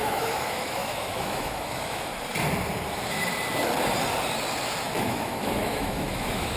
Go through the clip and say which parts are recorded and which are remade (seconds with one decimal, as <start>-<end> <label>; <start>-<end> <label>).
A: 0.0-2.1 remade; 2.1-5.0 recorded; 5.0-6.6 remade

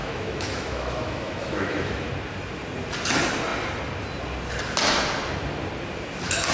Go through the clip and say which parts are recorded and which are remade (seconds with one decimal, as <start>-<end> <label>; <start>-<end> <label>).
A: 0.0-2.1 remade; 2.1-6.5 recorded

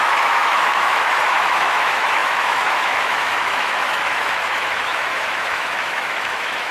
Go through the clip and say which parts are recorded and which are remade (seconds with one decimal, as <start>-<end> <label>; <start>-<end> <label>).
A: 0.0-6.7 remade

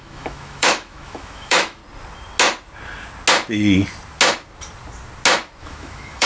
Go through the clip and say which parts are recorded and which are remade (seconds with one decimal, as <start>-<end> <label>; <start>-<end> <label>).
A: 0.0-1.8 remade; 1.8-5.6 recorded; 5.6-6.3 remade

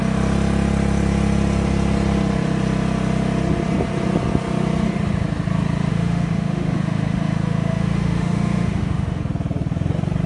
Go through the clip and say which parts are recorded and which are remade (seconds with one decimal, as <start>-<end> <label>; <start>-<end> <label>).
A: 0.0-5.9 recorded; 5.9-9.2 remade; 9.2-10.3 recorded

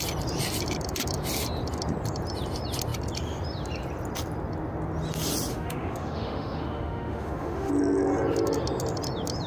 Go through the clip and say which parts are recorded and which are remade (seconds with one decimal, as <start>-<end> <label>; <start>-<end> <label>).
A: 0.0-5.5 recorded; 5.5-7.7 remade; 7.7-9.5 recorded

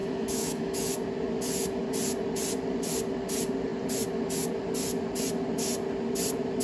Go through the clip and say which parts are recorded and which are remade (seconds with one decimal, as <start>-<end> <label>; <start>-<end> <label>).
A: 0.0-0.9 remade; 0.9-6.6 recorded